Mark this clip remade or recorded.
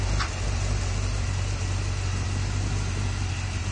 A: recorded